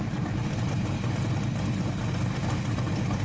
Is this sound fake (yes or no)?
no